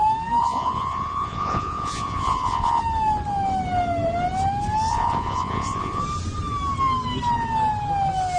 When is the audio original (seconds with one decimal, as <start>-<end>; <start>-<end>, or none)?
0.0-0.4; 2.8-4.9; 6.0-8.4

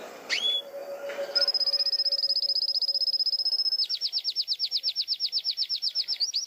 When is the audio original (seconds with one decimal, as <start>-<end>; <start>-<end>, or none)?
0.8-2.2; 2.8-5.4

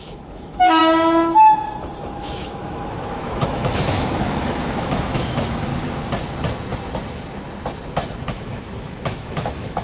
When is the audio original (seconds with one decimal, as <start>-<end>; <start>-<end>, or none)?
0.8-2.0; 5.7-8.3